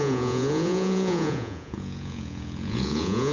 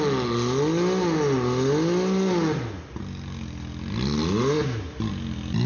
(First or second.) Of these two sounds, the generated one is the first